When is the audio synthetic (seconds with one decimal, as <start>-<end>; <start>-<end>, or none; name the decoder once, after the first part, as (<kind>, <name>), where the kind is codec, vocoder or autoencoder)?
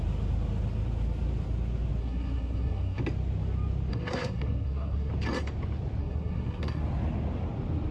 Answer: 2.0-3.0 (codec, SNAC); 3.9-5.1; 6.0-6.8